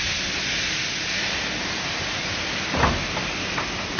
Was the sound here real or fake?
real